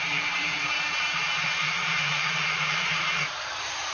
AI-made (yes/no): yes